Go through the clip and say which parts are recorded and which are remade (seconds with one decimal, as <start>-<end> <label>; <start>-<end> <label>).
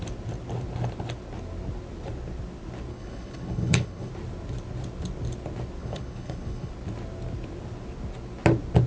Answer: 0.0-2.9 recorded; 2.9-4.1 remade; 4.1-5.8 recorded; 5.8-6.7 remade; 6.7-8.9 recorded